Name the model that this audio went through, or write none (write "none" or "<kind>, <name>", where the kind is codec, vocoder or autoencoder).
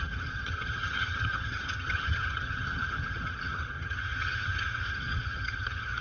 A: vocoder, HiFi-GAN